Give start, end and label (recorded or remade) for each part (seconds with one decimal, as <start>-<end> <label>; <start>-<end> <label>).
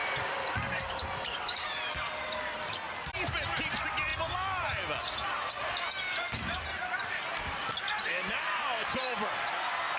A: 0.0-4.1 remade; 4.1-5.1 recorded; 5.1-10.0 remade